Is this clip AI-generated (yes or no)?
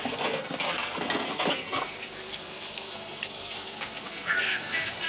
yes